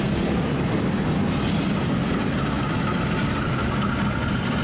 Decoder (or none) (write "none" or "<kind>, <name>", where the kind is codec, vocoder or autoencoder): none